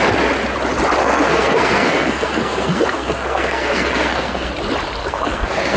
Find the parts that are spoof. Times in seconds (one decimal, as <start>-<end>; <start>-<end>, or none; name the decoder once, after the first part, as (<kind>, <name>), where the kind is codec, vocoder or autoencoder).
1.0-4.5 (codec, SNAC); 5.0-5.8

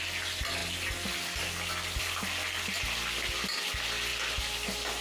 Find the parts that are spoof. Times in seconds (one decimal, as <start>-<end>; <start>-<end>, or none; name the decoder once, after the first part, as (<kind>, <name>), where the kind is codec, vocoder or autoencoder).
none